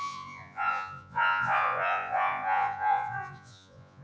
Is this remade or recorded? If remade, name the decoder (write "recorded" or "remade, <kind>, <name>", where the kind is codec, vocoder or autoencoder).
remade, vocoder, Vocos